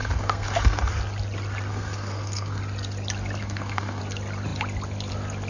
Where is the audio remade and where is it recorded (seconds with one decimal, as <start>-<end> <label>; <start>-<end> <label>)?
0.0-0.9 remade; 0.9-1.7 recorded; 1.7-2.6 remade; 2.6-3.4 recorded; 3.4-4.0 remade; 4.0-5.5 recorded